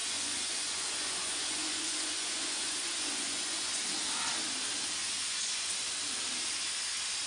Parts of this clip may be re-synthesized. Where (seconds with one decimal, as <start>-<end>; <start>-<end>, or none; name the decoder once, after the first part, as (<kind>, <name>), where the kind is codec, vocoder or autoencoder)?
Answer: 0.0-3.8 (vocoder, Vocos); 5.0-5.7